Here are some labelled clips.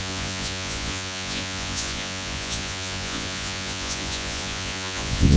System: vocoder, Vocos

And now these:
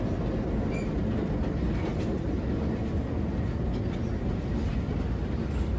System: none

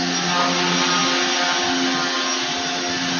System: none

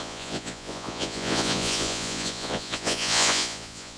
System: vocoder, Vocos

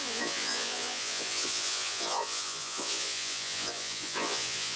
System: vocoder, Vocos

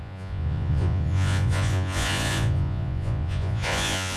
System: vocoder, Vocos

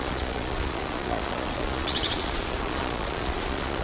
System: vocoder, Vocos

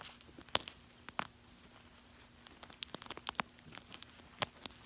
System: none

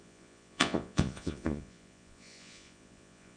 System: vocoder, Vocos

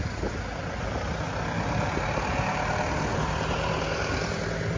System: none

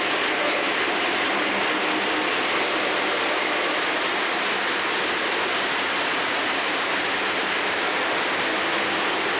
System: none